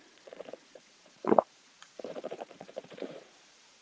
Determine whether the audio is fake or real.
fake